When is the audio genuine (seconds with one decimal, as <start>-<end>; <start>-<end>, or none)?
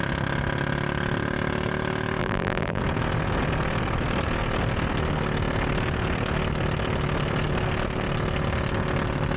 0.0-2.2; 2.8-9.4